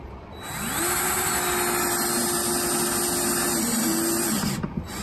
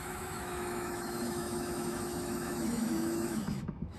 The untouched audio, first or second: first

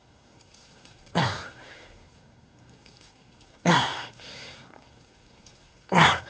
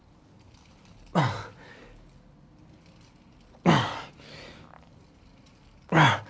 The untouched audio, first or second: second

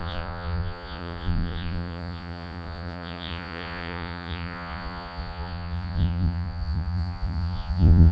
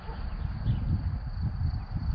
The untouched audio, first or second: second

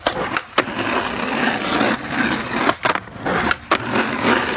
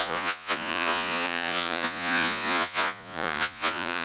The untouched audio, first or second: first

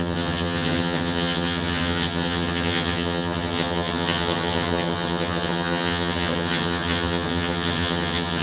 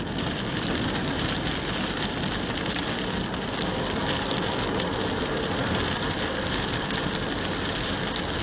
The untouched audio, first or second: second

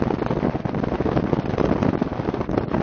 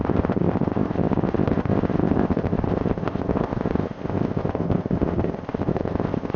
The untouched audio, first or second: first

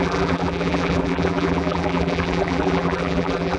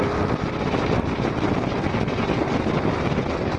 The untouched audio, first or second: second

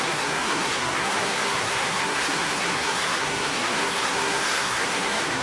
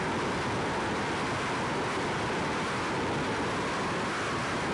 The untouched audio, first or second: second